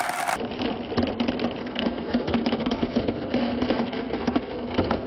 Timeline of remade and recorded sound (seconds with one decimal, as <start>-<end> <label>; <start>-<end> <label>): 0.0-1.6 recorded; 1.6-5.1 remade